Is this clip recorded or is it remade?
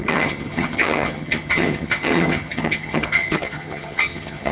remade